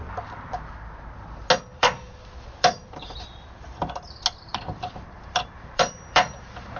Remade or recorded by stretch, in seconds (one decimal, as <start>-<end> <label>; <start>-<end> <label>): 0.0-1.7 recorded; 1.7-3.9 remade; 3.9-4.5 recorded; 4.5-6.8 remade